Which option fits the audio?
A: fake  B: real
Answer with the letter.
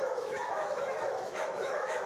A